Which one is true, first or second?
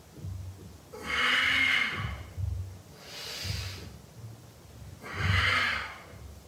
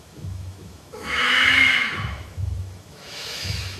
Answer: first